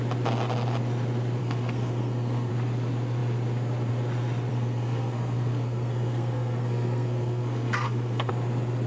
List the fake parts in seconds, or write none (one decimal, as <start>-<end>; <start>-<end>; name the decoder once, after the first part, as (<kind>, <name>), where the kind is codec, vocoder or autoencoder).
1.4-2.5 (codec, SNAC); 4.5-8.3

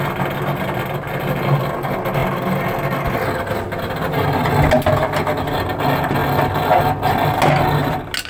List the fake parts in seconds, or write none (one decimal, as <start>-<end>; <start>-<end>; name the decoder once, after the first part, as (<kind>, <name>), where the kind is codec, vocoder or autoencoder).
none

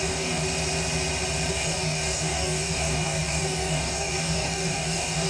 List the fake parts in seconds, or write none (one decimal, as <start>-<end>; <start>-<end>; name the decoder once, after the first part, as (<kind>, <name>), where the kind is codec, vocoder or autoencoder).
0.0-0.4 (codec, DAC); 1.5-5.3

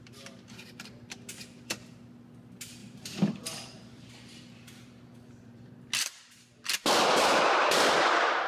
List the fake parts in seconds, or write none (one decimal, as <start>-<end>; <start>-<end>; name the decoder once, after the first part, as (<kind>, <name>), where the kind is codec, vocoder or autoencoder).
2.8-5.7 (vocoder, BigVGAN v2)